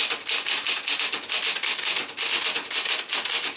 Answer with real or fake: real